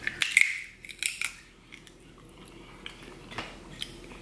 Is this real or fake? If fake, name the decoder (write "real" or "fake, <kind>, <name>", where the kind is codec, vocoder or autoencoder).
real